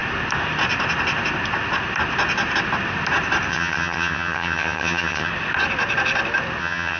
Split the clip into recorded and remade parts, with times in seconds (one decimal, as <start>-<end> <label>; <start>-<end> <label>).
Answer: 0.0-3.5 recorded; 3.5-5.3 remade; 5.3-6.6 recorded; 6.6-7.0 remade